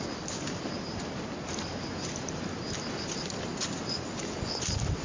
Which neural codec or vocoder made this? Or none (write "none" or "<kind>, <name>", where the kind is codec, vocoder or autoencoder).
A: vocoder, BigVGAN v2